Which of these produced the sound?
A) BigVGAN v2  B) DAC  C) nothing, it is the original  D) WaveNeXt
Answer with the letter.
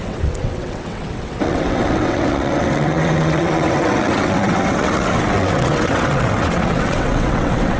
D